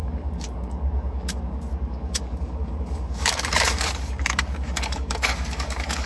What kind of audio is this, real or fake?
fake